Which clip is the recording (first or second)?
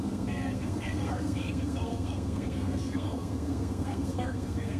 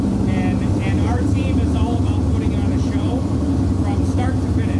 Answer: second